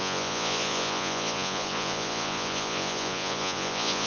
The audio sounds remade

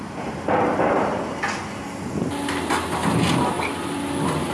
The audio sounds recorded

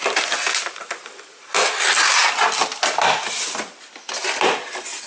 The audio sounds recorded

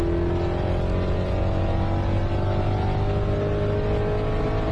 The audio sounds recorded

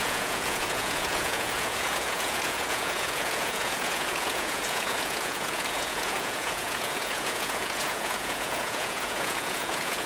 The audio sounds remade